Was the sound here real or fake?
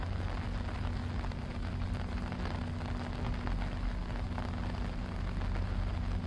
real